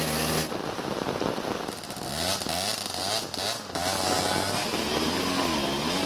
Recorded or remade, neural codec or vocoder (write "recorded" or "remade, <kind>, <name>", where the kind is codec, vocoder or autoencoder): recorded